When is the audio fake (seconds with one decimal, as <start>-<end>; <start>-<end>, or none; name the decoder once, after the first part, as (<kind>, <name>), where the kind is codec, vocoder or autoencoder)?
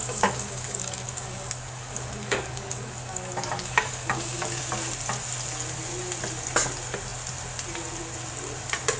0.0-4.6 (codec, DAC)